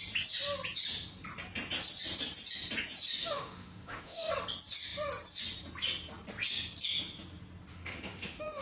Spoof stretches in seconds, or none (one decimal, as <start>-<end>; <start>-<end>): 3.2-4.3; 7.7-8.6